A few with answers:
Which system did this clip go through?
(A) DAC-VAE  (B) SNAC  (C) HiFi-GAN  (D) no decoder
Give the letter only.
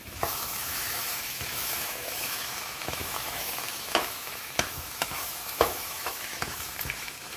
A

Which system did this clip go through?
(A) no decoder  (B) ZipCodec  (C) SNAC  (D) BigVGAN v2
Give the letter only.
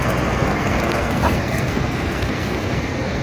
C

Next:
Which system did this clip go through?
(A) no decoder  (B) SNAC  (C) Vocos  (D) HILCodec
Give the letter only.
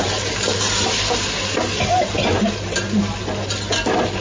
A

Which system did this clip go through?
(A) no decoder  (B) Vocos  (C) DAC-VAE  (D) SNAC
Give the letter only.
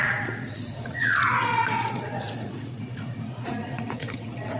B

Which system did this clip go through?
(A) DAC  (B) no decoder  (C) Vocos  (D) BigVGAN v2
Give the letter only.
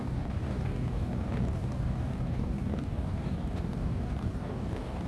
A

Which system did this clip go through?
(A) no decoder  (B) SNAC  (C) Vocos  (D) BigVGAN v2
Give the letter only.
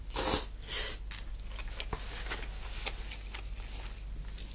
A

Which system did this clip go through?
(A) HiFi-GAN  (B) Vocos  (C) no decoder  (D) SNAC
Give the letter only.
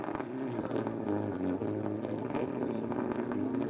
C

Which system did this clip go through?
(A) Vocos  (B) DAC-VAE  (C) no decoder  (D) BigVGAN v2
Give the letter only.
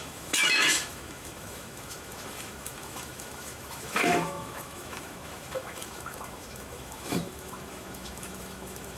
B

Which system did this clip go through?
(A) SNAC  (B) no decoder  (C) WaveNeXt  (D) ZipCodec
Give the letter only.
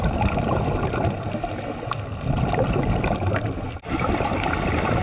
B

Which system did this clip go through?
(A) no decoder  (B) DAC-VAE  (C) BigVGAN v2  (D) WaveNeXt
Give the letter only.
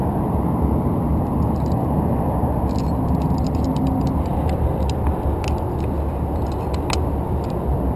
A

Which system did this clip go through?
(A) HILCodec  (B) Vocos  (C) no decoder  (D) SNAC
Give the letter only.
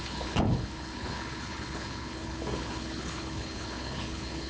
A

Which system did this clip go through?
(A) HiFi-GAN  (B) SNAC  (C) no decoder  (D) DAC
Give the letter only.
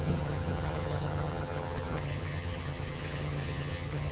A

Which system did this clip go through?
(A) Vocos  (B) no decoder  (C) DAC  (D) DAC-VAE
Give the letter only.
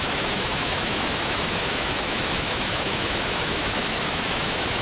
D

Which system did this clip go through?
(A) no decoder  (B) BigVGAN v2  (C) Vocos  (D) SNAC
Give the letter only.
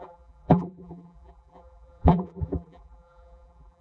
B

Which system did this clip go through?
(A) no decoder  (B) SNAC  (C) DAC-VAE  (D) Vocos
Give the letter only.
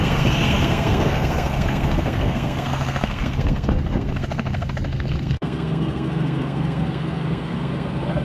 B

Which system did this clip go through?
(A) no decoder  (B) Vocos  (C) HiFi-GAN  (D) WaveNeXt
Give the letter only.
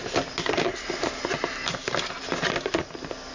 A